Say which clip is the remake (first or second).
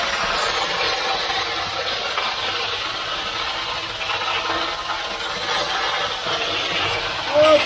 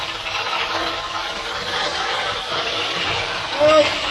second